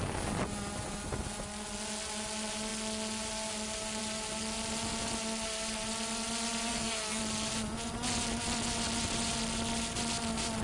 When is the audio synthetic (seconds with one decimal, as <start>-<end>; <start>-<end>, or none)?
6.7-7.2